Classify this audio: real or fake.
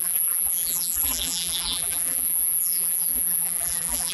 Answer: fake